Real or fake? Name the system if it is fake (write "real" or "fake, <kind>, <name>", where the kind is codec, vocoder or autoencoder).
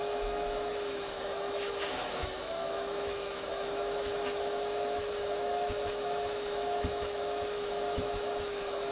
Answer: fake, autoencoder, DAC-VAE